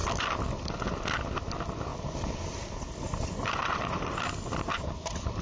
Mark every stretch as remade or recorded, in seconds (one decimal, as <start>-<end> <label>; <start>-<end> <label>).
0.0-0.9 remade; 0.9-1.9 recorded; 1.9-5.4 remade